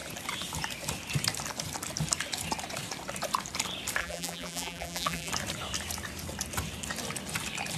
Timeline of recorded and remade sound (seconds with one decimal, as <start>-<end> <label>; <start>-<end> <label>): 0.0-4.0 recorded; 4.0-5.3 remade; 5.3-7.8 recorded